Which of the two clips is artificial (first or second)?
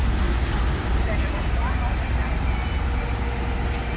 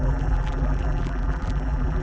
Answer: second